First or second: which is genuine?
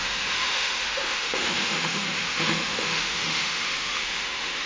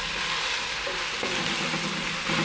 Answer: second